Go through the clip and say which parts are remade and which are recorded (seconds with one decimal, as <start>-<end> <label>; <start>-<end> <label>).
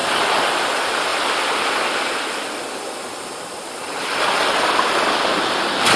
0.0-6.0 recorded